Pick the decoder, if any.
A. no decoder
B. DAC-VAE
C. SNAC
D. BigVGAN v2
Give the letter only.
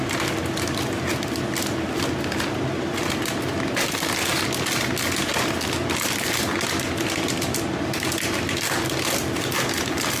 A